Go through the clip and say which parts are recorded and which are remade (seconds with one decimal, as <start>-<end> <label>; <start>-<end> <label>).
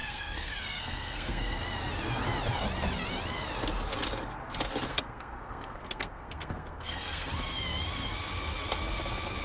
0.0-1.6 remade; 1.6-4.9 recorded; 4.9-7.3 remade; 7.3-9.4 recorded